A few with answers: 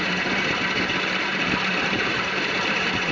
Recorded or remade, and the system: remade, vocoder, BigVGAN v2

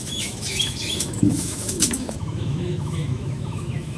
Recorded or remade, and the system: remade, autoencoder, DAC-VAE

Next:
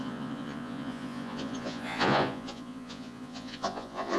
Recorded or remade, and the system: remade, vocoder, Vocos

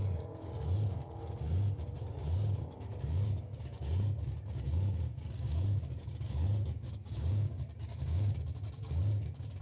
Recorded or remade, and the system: remade, codec, DAC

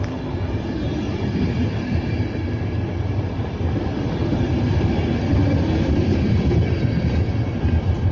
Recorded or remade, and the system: recorded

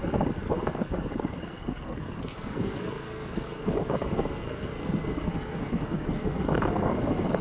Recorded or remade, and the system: remade, codec, SNAC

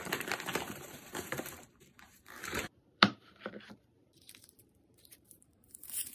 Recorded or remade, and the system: remade, vocoder, BigVGAN v2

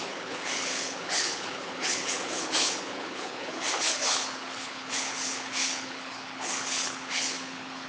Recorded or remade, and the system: remade, codec, HILCodec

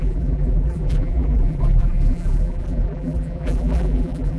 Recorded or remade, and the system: remade, vocoder, BigVGAN v2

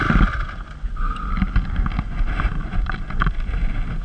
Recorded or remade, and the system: recorded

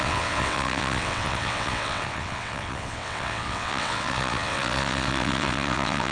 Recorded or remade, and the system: remade, vocoder, WaveNeXt